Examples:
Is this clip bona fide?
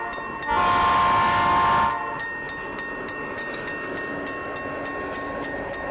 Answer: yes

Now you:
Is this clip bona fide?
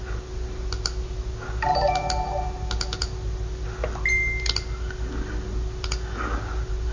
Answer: yes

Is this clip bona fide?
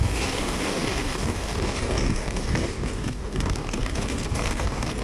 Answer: no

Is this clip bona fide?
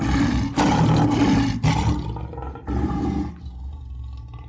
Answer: yes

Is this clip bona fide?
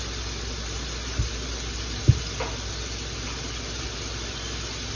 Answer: yes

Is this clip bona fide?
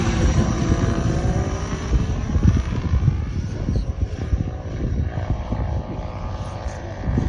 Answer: no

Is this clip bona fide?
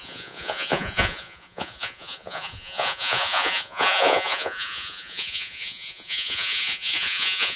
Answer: no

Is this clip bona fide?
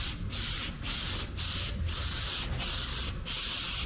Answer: yes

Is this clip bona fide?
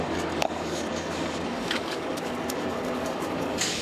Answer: no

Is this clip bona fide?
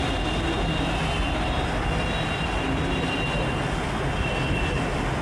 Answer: yes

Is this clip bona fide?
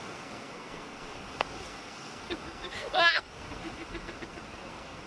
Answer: no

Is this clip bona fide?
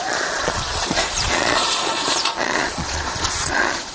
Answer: no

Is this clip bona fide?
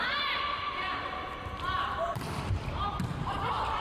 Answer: yes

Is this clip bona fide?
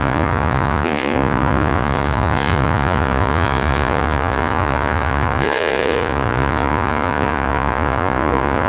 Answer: no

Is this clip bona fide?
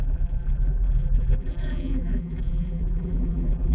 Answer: no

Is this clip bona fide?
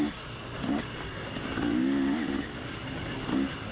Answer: yes